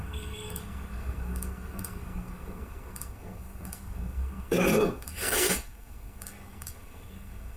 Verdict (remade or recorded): remade